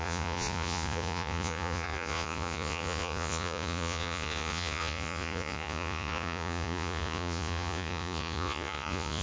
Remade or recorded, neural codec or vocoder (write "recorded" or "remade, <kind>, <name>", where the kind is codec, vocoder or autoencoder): remade, vocoder, Vocos